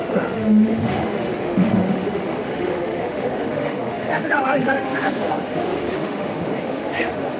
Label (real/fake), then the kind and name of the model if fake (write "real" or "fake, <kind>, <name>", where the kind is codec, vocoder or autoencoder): fake, autoencoder, DAC-VAE